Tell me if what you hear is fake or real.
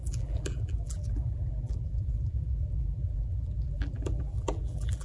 fake